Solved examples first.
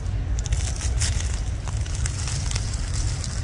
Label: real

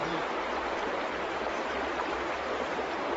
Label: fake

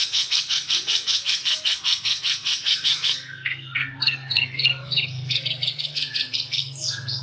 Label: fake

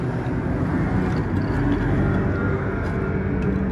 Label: real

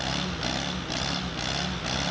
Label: real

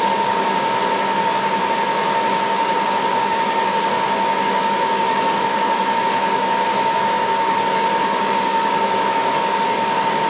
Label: fake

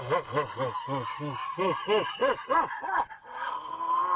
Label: real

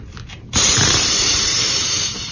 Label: fake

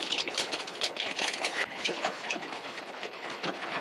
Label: fake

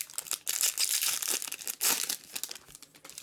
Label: real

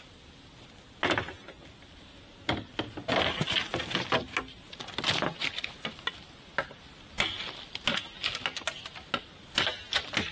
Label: real